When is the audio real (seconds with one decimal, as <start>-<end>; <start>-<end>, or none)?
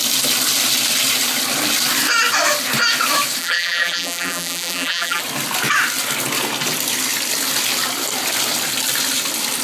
0.0-3.4; 5.2-9.6